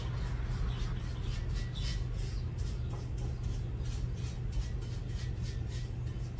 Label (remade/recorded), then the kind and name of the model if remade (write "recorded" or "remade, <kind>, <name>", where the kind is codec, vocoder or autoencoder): recorded